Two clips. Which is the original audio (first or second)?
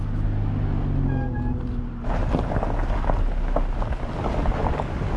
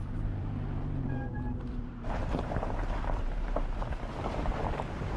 first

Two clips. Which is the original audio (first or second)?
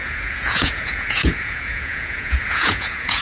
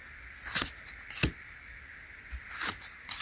second